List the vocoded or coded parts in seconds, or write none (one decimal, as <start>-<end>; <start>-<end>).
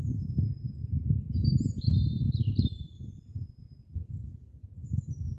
3.3-4.1